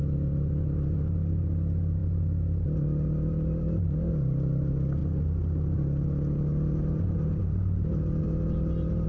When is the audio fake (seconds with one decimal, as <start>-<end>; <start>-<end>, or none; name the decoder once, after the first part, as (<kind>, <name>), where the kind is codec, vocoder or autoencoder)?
none